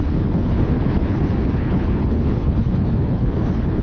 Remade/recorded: remade